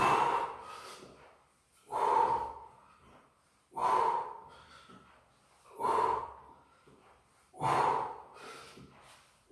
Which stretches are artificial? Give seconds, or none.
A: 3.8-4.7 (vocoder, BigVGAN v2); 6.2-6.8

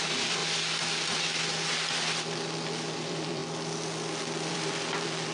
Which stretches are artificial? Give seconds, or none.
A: 0.0-0.4 (vocoder, BigVGAN v2); 3.0-3.4; 4.5-5.3

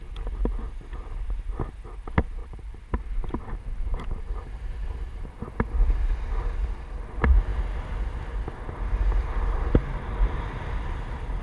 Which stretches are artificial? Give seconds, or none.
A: 2.4-5.4 (vocoder, BigVGAN v2)

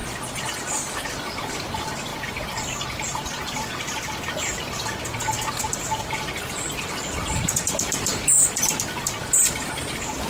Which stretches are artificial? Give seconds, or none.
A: 0.7-2.1 (vocoder, BigVGAN v2); 5.5-10.3

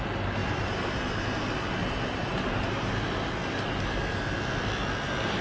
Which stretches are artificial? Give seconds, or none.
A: 0.4-1.4 (vocoder, BigVGAN v2); 1.8-2.9

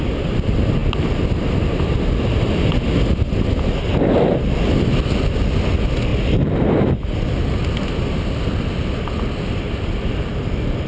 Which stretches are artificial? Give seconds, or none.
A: none

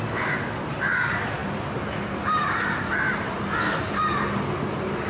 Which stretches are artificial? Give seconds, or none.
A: 1.4-3.4 (vocoder, BigVGAN v2)

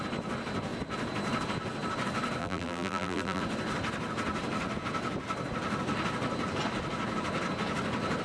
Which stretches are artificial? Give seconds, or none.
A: 2.4-3.4 (vocoder, BigVGAN v2)